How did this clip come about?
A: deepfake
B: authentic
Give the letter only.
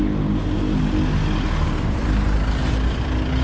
B